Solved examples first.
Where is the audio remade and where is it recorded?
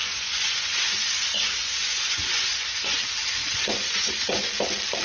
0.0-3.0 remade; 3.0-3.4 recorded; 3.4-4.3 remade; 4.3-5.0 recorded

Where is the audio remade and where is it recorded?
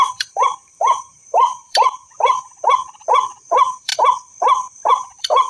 0.0-3.9 remade; 3.9-4.9 recorded; 4.9-5.5 remade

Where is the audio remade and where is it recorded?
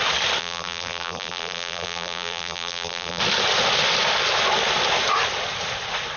0.0-0.4 recorded; 0.4-3.2 remade; 3.2-6.2 recorded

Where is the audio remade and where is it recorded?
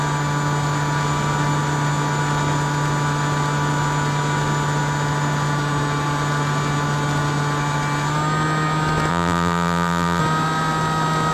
0.0-9.1 recorded; 9.1-10.2 remade; 10.2-11.3 recorded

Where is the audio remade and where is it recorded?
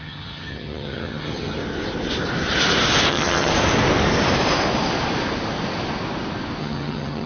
0.0-1.6 remade; 1.6-3.1 recorded; 3.1-3.5 remade; 3.5-6.6 recorded; 6.6-7.3 remade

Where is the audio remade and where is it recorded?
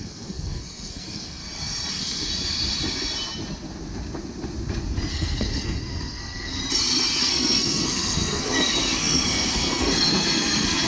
0.0-1.4 remade; 1.4-1.9 recorded; 1.9-2.3 remade; 2.3-5.1 recorded; 5.1-6.6 remade; 6.6-7.2 recorded; 7.2-10.9 remade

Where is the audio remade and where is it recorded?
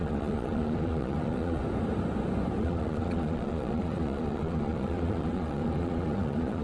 0.0-1.6 remade; 1.6-2.6 recorded; 2.6-6.6 remade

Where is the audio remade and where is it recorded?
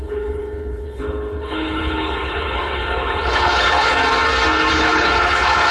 0.0-4.0 remade; 4.0-4.7 recorded; 4.7-5.7 remade